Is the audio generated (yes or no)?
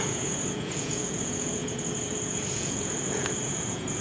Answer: yes